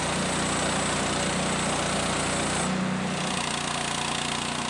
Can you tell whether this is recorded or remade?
recorded